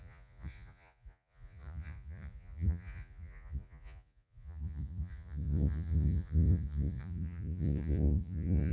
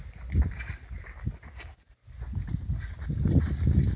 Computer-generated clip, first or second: first